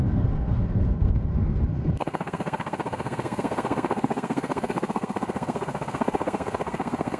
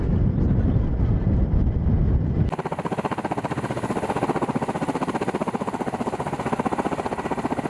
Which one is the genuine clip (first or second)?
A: second